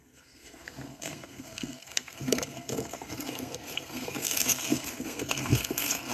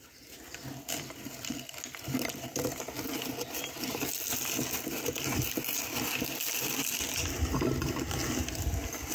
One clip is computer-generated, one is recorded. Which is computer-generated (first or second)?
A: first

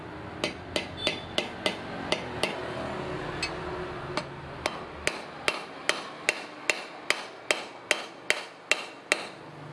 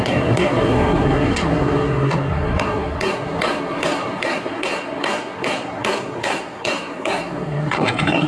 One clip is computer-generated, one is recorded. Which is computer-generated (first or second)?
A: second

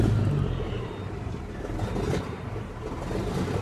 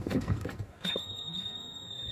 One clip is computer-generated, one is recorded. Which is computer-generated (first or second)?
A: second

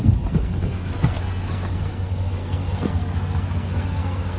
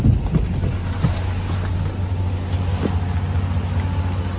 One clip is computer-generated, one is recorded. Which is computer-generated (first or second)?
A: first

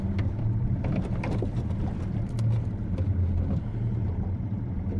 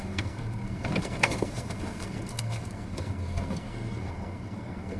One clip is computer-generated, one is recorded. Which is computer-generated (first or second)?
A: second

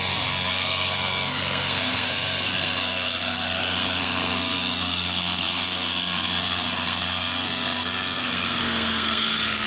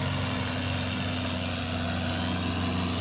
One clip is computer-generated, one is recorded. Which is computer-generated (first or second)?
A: first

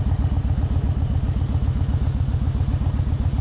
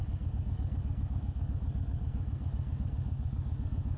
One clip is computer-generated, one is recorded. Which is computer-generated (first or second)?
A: second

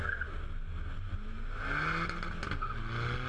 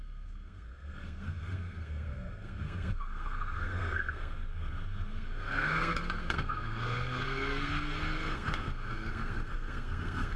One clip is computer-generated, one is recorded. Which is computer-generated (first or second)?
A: second